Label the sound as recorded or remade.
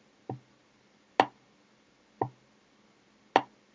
recorded